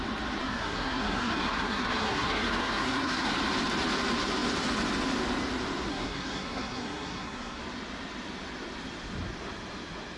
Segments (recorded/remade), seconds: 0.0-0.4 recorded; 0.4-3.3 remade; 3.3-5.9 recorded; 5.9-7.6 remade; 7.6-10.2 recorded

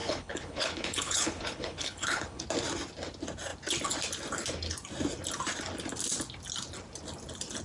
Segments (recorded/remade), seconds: 0.0-2.4 remade; 2.4-7.6 recorded

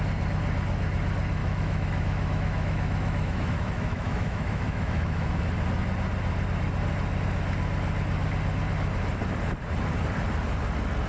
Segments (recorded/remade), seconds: 0.0-1.4 recorded; 1.4-5.4 remade; 5.4-11.1 recorded

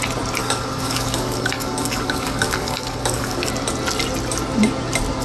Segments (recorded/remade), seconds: 0.0-0.4 recorded; 0.4-3.5 remade; 3.5-5.2 recorded

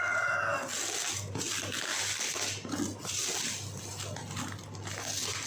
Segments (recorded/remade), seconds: 0.0-1.9 recorded; 1.9-3.8 remade; 3.8-5.5 recorded